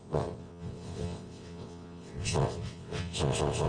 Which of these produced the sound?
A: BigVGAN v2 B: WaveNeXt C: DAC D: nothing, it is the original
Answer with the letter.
B